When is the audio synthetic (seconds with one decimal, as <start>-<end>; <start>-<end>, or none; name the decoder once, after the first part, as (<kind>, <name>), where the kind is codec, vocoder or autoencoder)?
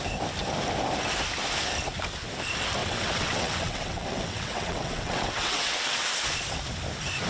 2.8-6.0 (vocoder, WaveNeXt)